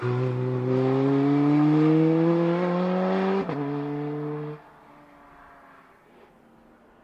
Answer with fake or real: real